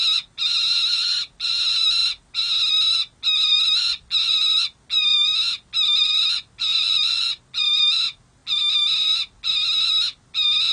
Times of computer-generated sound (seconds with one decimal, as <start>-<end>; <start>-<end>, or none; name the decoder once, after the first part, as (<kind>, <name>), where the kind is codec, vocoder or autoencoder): 6.7-7.4 (vocoder, BigVGAN v2)